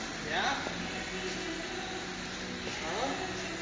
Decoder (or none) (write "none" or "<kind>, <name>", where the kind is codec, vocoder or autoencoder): none